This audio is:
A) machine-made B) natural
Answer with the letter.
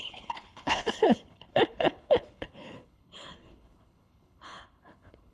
A